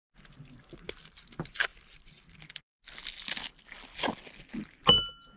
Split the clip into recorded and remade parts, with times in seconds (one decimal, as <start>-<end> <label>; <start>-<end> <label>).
0.0-5.4 recorded

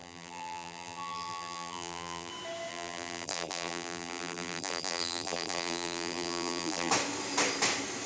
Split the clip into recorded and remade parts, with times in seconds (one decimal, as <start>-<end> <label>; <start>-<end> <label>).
0.0-2.3 remade; 2.3-2.7 recorded; 2.7-6.9 remade; 6.9-8.1 recorded

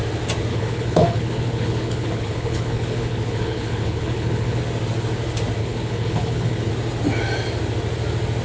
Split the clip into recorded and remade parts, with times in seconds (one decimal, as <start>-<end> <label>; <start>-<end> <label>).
0.0-0.5 recorded; 0.5-4.6 remade; 4.6-5.6 recorded; 5.6-6.7 remade; 6.7-8.4 recorded

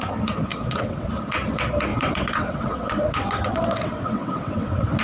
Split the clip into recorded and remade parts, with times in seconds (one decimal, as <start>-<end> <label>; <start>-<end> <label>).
0.0-0.5 recorded; 0.5-1.1 remade; 1.1-1.9 recorded; 1.9-5.0 remade

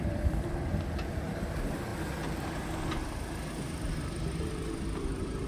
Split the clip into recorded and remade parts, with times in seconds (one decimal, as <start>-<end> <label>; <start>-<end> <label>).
0.0-1.9 remade; 1.9-3.7 recorded; 3.7-5.5 remade